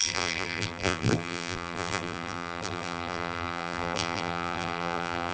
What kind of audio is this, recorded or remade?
remade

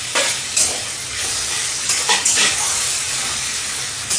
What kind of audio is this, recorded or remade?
remade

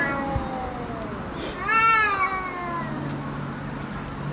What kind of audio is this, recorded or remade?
recorded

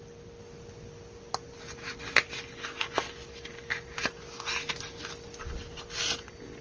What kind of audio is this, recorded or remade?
recorded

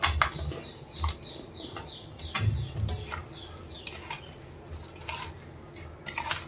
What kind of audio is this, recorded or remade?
recorded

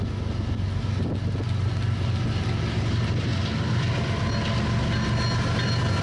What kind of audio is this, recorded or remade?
recorded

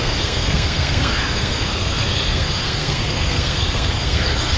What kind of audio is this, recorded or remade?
remade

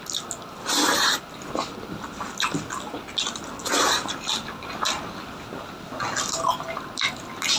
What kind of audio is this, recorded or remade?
recorded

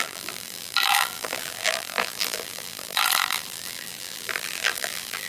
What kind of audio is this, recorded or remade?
remade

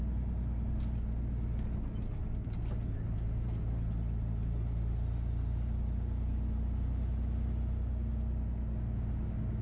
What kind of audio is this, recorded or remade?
recorded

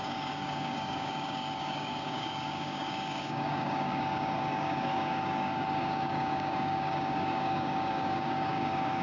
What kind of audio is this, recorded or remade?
remade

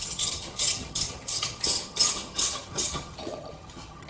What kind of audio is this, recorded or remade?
remade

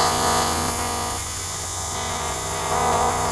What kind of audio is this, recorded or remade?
remade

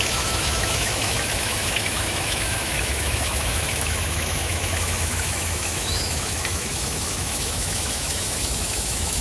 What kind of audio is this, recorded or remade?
remade